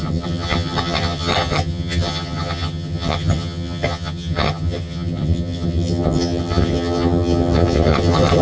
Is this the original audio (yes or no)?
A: no